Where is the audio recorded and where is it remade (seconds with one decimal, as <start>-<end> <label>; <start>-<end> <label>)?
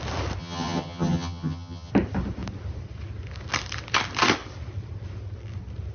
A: 0.0-0.4 recorded; 0.4-1.9 remade; 1.9-5.9 recorded